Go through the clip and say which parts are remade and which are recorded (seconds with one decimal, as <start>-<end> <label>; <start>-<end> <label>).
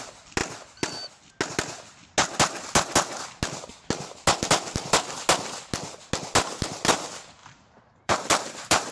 0.0-7.4 recorded; 7.4-8.9 remade